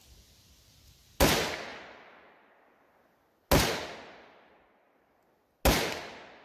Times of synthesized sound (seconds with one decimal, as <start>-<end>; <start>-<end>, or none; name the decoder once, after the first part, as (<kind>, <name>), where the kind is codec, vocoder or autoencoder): none